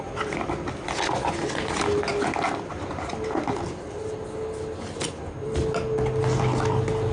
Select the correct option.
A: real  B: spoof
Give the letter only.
A